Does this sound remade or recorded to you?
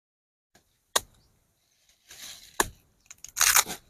recorded